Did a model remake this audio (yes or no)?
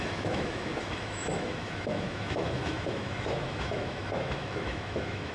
yes